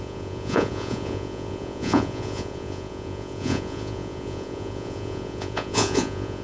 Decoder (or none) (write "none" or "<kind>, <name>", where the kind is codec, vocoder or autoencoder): vocoder, Vocos